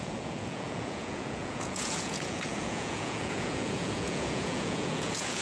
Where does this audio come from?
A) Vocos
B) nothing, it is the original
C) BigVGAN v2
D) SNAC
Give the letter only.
A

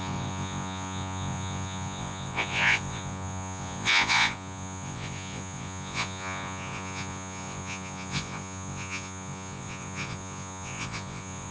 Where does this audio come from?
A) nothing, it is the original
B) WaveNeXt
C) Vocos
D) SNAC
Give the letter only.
C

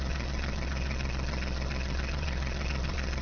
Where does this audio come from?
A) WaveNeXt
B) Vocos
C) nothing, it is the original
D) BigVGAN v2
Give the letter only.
B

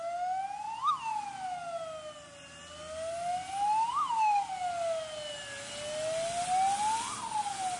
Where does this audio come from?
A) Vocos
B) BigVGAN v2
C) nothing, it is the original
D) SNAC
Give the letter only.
C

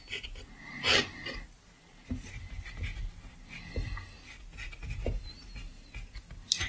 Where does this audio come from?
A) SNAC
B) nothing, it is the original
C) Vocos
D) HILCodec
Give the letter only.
B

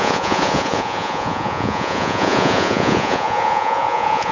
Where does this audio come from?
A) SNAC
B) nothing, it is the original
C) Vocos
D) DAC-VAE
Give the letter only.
C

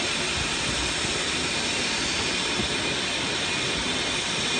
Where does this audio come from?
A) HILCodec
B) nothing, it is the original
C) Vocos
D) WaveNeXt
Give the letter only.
B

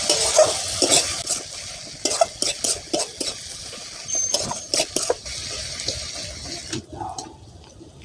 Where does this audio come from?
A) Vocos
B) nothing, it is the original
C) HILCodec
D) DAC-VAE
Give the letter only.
B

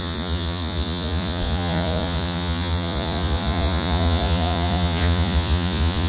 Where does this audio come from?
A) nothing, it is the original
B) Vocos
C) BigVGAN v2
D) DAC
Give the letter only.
B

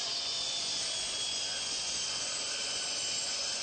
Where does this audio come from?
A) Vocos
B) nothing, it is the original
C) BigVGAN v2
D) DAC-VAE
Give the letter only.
A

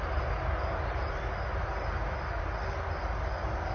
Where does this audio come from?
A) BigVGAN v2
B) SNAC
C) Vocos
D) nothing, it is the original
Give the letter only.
D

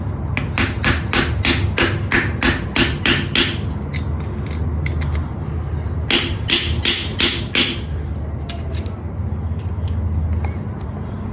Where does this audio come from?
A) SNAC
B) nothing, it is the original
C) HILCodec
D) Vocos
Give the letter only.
B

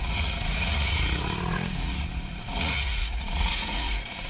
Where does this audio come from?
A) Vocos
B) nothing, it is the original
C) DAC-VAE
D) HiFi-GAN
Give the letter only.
A